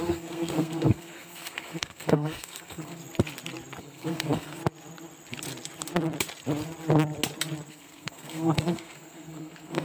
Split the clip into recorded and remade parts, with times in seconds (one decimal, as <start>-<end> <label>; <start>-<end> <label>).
0.0-3.0 remade; 3.0-3.8 recorded; 3.8-4.6 remade; 4.6-7.7 recorded; 7.7-9.8 remade